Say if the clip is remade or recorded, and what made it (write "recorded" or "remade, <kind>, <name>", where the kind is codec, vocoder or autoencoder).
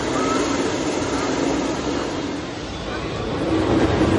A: recorded